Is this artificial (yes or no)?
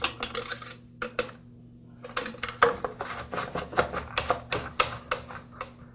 no